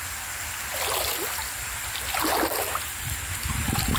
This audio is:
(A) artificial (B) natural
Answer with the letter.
B